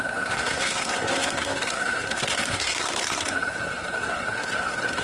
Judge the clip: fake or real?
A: fake